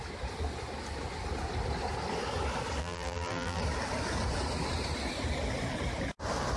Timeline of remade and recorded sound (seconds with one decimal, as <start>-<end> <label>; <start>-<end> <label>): 0.0-2.8 recorded; 2.8-3.6 remade; 3.6-6.6 recorded